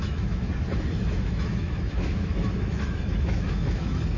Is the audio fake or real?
fake